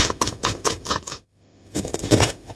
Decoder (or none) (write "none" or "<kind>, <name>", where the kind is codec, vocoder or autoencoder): autoencoder, DAC-VAE